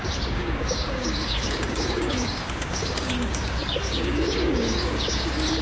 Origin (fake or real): fake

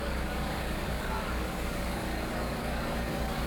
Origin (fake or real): fake